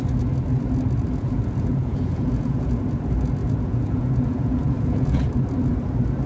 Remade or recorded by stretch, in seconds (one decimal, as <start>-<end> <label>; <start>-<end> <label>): 0.0-1.2 recorded; 1.2-2.7 remade; 2.7-3.4 recorded; 3.4-5.3 remade; 5.3-6.3 recorded